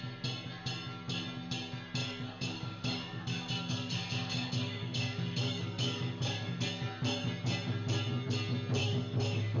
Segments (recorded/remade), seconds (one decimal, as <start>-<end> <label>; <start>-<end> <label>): 0.0-2.0 recorded; 2.0-6.6 remade; 6.6-8.8 recorded; 8.8-9.6 remade